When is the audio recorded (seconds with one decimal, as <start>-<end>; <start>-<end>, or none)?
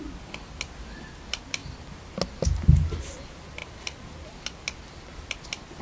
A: 0.0-3.6; 4.2-5.8